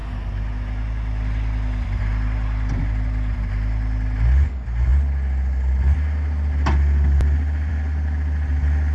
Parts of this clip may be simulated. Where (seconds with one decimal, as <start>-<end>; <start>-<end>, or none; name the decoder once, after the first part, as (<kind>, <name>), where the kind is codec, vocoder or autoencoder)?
none